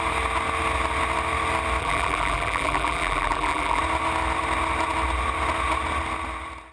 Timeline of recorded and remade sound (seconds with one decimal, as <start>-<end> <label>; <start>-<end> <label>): 0.0-1.8 recorded; 1.8-3.8 remade; 3.8-6.7 recorded